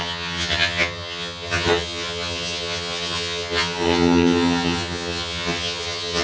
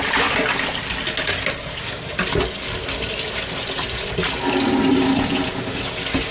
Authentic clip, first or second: second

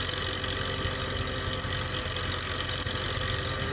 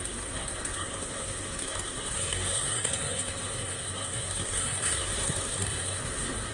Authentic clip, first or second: first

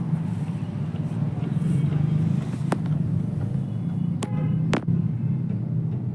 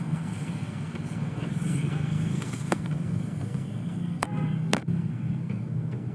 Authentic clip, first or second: first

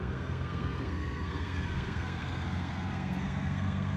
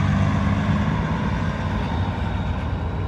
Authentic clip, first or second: second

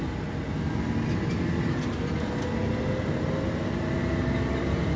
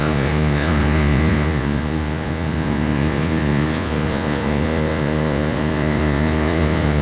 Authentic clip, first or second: first